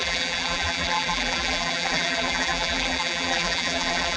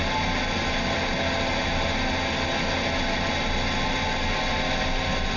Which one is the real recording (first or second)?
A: second